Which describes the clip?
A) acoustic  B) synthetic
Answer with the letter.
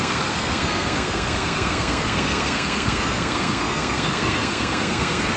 B